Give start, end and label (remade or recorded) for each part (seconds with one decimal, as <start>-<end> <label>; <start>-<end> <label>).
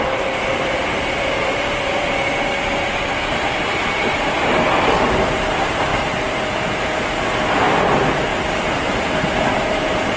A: 0.0-10.2 recorded